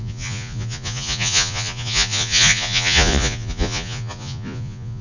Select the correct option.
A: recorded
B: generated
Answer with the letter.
B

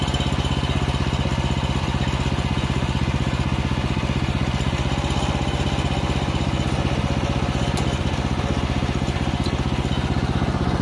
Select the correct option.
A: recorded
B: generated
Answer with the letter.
A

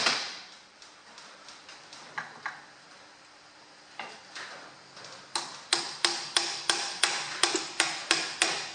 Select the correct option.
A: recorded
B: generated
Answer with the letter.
A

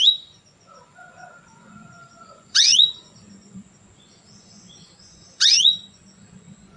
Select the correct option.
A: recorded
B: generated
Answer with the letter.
B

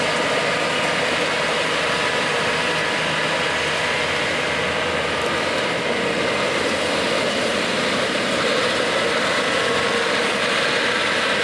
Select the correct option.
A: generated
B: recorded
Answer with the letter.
A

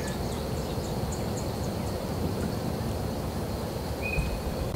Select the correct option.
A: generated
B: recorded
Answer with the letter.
B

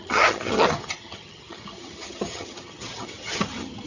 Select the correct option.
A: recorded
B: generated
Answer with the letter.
B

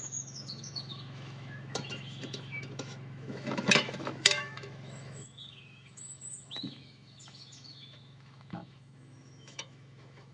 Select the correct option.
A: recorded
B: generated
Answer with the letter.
B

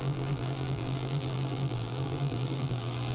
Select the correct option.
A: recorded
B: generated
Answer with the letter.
B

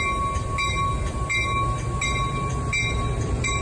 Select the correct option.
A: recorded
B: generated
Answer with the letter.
A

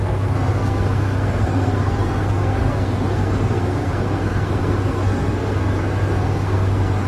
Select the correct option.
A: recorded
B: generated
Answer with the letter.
B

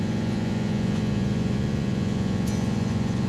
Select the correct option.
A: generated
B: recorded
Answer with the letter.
A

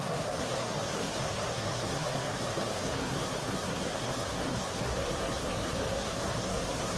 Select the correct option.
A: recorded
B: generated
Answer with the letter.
B